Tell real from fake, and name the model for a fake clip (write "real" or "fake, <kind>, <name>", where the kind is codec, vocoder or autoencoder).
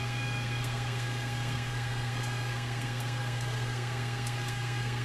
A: fake, codec, SNAC